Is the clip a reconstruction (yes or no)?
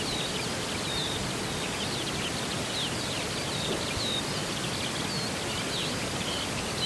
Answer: no